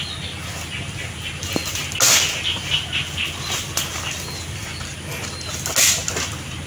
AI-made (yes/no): no